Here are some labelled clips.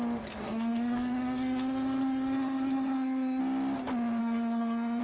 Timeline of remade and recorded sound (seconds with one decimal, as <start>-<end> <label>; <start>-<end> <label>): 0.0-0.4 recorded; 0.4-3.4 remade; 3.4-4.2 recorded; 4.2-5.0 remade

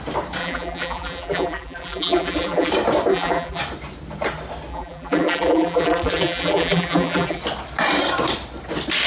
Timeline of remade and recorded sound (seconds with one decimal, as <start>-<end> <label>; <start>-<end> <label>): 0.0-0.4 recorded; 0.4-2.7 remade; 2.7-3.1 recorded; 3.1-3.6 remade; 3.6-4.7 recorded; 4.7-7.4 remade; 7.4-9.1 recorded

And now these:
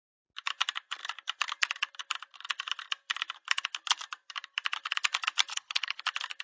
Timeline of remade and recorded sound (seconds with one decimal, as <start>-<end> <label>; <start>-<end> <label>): 0.0-5.5 recorded; 5.5-6.0 remade; 6.0-6.4 recorded

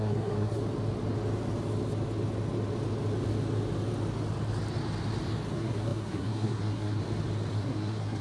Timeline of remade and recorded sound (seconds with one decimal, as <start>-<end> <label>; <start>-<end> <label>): 0.0-0.6 remade; 0.6-5.5 recorded; 5.5-7.0 remade; 7.0-7.5 recorded; 7.5-8.2 remade

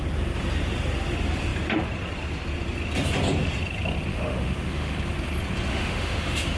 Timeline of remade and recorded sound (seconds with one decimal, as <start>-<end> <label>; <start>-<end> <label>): 0.0-4.1 recorded; 4.1-4.9 remade; 4.9-5.7 recorded; 5.7-6.6 remade

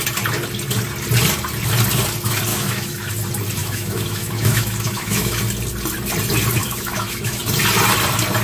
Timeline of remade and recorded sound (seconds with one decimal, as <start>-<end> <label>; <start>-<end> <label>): 0.0-2.5 recorded; 2.5-3.1 remade; 3.1-3.6 recorded; 3.6-5.4 remade; 5.4-6.6 recorded; 6.6-7.4 remade; 7.4-8.4 recorded

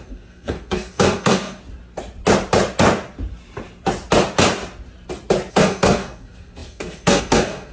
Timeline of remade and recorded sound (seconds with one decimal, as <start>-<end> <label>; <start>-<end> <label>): 0.0-1.6 remade; 1.6-5.5 recorded; 5.5-7.7 remade